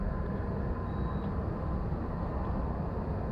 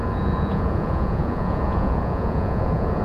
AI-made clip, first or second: second